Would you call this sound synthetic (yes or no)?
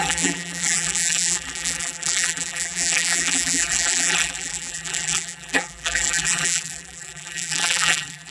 yes